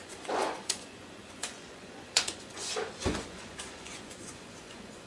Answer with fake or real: fake